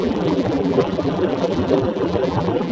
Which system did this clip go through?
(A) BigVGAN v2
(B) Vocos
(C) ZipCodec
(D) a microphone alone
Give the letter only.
A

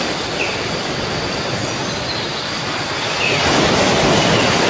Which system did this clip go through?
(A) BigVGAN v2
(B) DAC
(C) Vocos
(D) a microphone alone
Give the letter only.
A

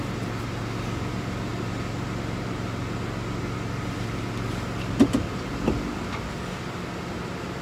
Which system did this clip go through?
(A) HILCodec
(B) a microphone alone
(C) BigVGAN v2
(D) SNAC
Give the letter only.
B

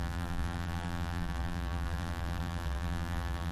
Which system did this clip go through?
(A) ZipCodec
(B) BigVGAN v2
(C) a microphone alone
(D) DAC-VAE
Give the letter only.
B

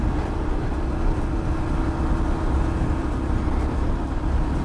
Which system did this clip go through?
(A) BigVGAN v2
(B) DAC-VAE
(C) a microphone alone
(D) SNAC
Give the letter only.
C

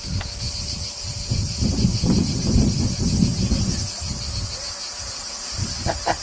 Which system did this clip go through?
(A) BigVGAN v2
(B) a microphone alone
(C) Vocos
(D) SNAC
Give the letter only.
A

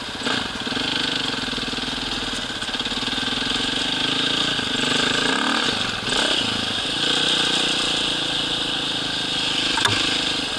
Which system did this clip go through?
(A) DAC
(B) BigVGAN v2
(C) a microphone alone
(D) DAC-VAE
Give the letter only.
C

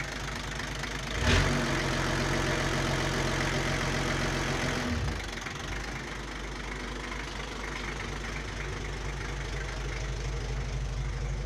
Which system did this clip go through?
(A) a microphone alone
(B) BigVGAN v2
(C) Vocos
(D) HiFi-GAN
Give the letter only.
A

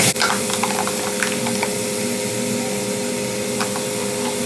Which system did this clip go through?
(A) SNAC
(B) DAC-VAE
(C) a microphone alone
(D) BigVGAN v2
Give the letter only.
C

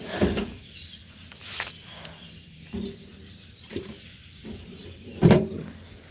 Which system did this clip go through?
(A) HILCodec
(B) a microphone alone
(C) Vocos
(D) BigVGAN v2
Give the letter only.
D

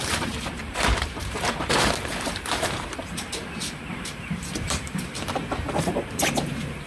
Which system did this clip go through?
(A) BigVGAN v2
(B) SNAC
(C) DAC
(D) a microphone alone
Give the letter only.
A